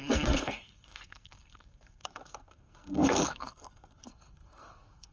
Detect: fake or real fake